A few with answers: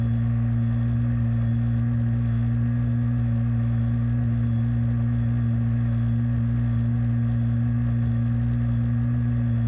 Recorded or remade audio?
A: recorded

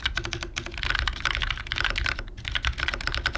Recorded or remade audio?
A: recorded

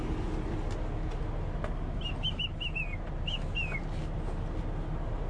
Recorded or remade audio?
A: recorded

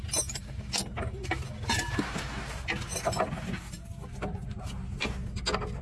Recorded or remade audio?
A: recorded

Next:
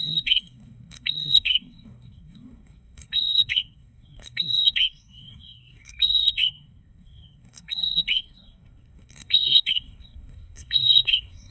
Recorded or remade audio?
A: remade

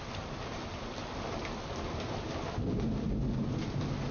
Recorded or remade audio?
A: recorded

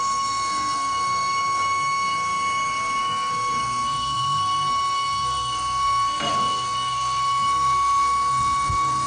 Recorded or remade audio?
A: remade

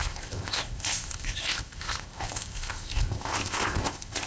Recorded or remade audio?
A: remade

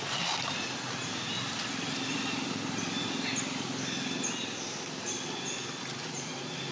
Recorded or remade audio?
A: recorded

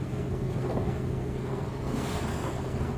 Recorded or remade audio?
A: remade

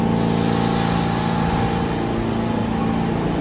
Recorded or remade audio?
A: recorded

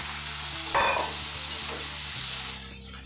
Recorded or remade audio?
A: recorded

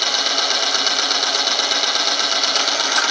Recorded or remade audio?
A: recorded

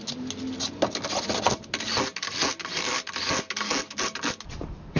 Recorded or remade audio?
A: recorded